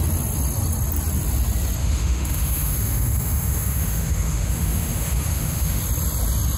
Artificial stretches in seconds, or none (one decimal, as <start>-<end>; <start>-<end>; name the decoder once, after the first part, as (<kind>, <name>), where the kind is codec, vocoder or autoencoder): 1.8-5.8 (autoencoder, DAC-VAE)